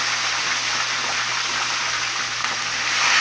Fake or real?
real